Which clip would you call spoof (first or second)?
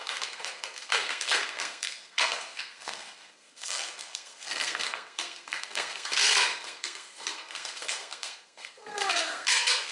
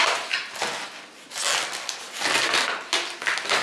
first